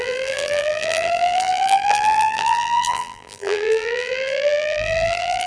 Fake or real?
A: fake